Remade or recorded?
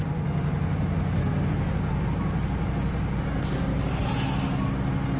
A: recorded